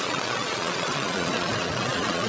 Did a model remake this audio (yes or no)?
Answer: yes